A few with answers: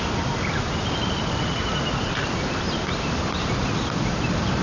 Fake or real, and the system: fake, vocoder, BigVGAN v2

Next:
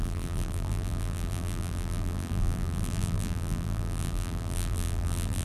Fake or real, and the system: fake, vocoder, BigVGAN v2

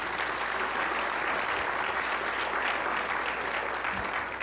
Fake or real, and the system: real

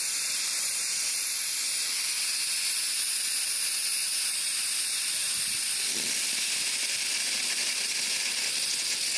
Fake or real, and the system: real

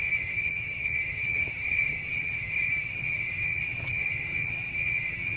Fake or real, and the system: fake, vocoder, HiFi-GAN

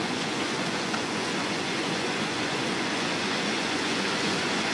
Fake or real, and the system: fake, vocoder, Vocos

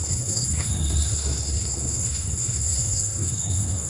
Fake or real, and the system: fake, codec, SNAC